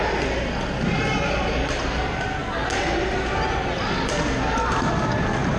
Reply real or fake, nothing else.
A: real